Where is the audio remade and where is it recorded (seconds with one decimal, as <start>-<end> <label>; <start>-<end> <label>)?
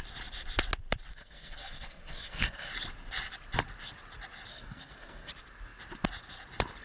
0.0-1.1 recorded; 1.1-2.7 remade; 2.7-4.5 recorded; 4.5-5.3 remade; 5.3-6.8 recorded